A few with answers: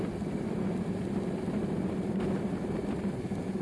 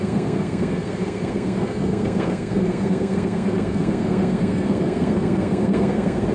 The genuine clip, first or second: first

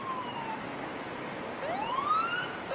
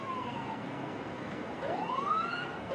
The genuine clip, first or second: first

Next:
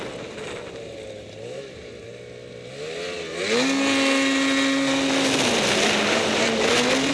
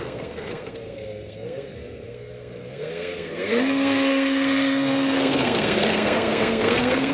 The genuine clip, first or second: first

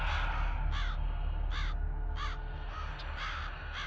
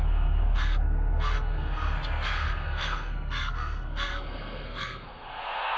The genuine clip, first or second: first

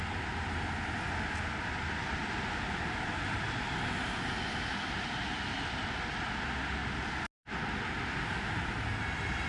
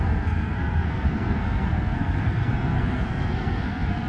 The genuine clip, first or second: first